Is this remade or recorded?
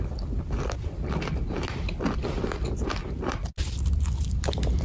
recorded